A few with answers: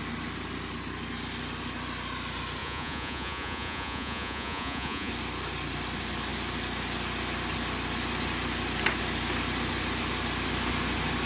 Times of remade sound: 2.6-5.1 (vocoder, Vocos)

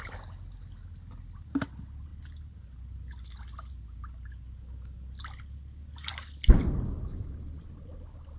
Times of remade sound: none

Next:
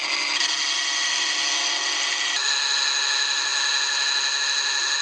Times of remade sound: none